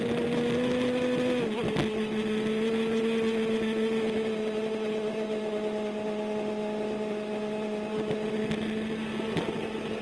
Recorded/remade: recorded